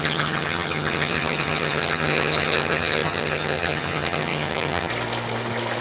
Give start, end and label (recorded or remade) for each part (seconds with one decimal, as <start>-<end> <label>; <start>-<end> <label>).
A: 0.0-4.9 remade; 4.9-5.8 recorded